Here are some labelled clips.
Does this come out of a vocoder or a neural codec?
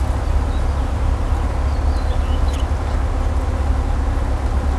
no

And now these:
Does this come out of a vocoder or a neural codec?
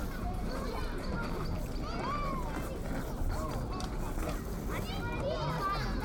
no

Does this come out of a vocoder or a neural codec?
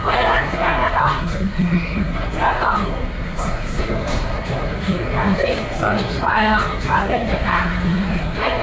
yes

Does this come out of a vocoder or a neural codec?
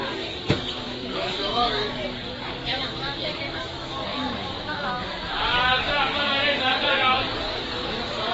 yes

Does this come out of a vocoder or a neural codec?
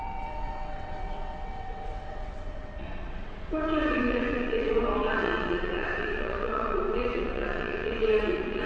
yes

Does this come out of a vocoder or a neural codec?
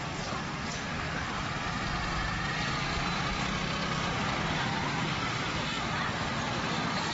no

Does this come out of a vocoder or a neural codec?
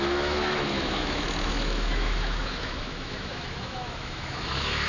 yes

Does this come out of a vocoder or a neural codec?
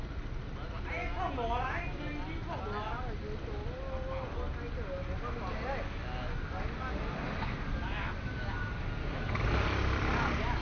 no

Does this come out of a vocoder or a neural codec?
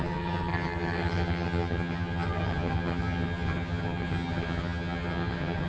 yes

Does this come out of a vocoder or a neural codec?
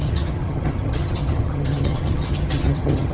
yes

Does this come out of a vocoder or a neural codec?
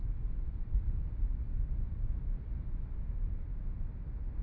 no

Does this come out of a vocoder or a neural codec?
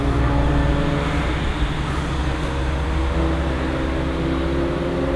no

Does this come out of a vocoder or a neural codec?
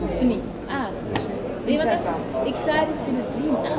no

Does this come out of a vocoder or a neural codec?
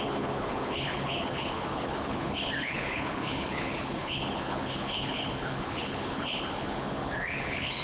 yes